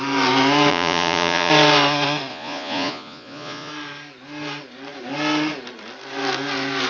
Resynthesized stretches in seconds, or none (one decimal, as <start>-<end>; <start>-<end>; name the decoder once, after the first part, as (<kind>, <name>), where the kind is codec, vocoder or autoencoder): 0.7-1.5 (vocoder, Vocos); 2.3-3.7